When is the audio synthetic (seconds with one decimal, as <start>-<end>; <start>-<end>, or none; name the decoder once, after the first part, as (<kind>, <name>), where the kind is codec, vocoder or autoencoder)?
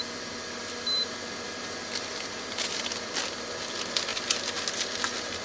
none